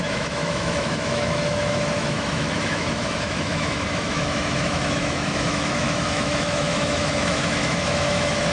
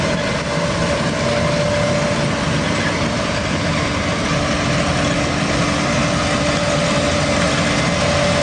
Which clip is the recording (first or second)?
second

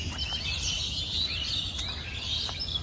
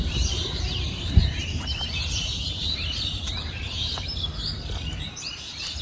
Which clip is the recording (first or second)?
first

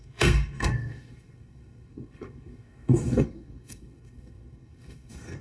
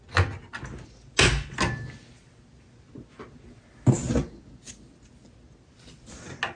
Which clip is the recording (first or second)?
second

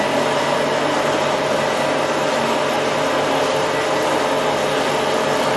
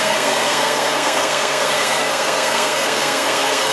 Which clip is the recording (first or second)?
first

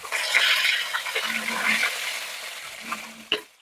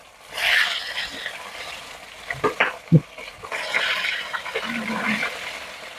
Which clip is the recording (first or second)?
first